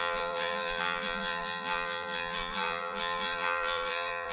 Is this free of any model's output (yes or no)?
no